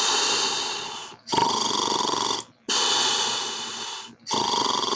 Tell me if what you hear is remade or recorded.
recorded